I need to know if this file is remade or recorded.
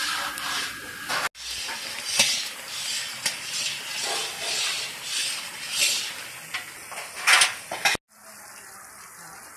recorded